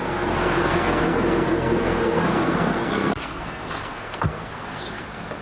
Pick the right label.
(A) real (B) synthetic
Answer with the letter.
B